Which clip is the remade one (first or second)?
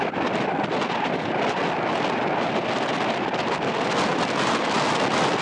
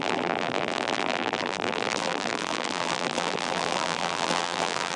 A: second